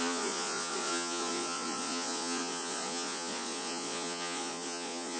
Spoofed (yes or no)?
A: yes